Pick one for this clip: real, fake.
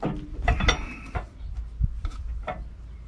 real